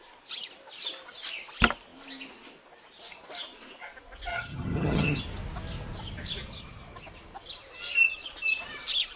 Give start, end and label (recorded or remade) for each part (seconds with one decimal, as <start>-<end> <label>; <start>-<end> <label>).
0.0-4.3 recorded; 4.3-5.2 remade; 5.2-9.2 recorded